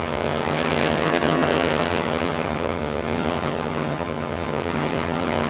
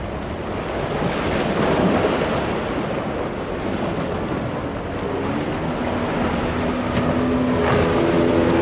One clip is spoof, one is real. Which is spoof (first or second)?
first